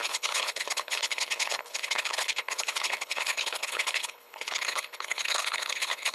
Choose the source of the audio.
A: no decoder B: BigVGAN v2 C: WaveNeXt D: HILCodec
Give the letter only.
D